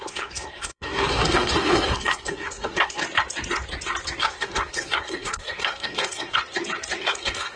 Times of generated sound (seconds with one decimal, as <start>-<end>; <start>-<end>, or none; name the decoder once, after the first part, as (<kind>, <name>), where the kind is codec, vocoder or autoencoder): 0.0-3.0 (codec, SNAC); 4.2-6.4; 7.0-7.6